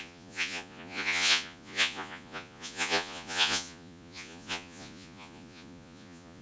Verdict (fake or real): fake